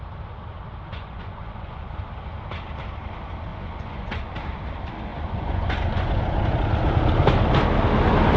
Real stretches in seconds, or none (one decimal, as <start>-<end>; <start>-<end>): 0.0-0.9; 1.9-3.5; 4.3-5.1; 6.2-8.4

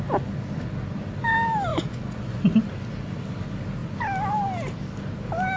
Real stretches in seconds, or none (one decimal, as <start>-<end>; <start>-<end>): 0.0-1.7; 2.4-5.6

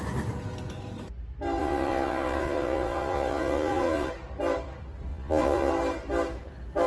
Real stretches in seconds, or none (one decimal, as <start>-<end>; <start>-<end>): 0.0-1.6; 4.1-5.1; 5.7-6.9

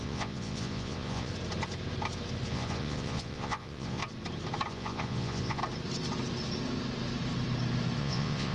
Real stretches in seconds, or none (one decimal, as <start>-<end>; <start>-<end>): 1.3-2.5; 4.0-4.7; 5.6-8.0

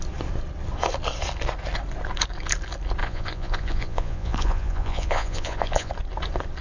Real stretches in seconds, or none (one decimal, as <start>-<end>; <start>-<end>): 0.0-3.0; 5.9-6.6

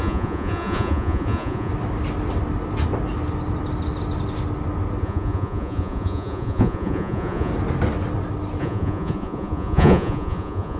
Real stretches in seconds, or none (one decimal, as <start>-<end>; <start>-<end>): 1.7-5.0; 7.5-8.6

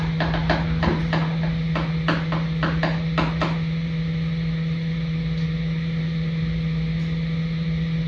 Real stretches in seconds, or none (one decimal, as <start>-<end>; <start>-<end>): 0.0-8.1

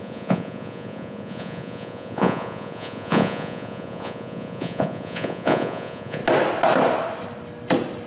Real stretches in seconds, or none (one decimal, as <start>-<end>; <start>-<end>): 6.2-8.1